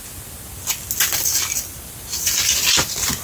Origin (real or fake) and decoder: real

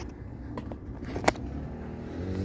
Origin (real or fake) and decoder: real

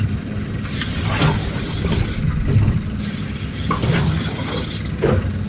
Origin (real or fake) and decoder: real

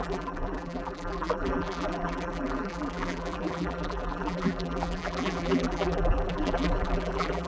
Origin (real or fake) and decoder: fake, vocoder, BigVGAN v2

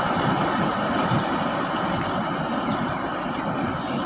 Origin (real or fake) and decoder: fake, vocoder, BigVGAN v2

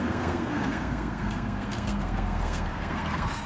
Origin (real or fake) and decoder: fake, codec, SNAC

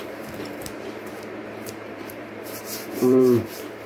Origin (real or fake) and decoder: fake, vocoder, BigVGAN v2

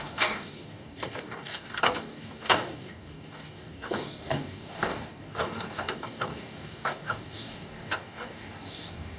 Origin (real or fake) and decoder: fake, codec, DAC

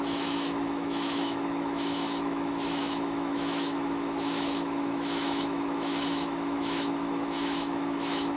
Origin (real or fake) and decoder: fake, autoencoder, DAC-VAE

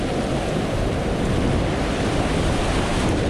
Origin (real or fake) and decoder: real